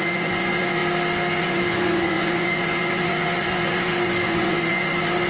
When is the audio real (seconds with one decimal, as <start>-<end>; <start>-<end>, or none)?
0.8-1.4